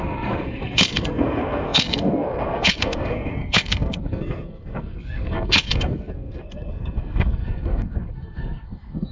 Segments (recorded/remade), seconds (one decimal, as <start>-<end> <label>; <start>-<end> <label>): 0.0-9.1 remade